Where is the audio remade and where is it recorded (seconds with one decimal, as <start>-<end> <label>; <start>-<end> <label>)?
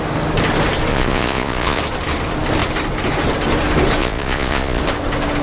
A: 0.0-0.9 recorded; 0.9-1.8 remade; 1.8-4.0 recorded; 4.0-4.8 remade; 4.8-5.4 recorded